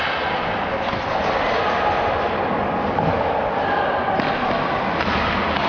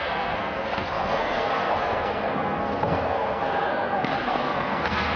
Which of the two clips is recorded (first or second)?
first